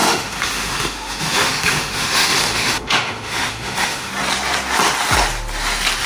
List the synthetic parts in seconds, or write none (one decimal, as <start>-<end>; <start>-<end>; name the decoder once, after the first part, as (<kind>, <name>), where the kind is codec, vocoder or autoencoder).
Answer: 0.0-4.1 (autoencoder, DAC-VAE)